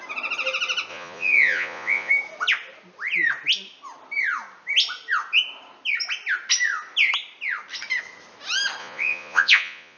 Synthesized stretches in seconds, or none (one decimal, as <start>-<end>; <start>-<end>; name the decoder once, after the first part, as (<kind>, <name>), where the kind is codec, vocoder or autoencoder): 0.9-2.1 (vocoder, Vocos); 8.8-10.0